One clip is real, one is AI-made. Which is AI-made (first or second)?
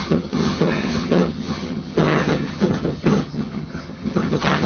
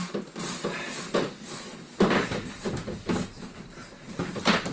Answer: first